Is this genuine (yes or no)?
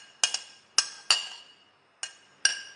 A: yes